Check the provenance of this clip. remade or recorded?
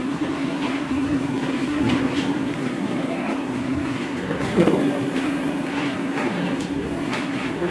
remade